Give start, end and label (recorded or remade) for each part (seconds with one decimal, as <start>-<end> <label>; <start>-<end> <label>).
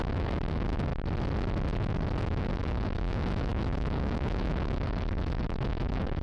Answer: 0.0-0.9 remade; 0.9-2.2 recorded; 2.2-6.2 remade